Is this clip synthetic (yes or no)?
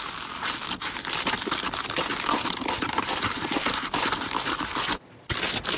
no